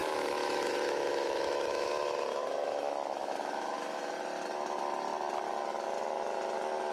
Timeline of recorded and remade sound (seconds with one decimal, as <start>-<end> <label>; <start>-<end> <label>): 0.0-4.1 remade; 4.1-6.9 recorded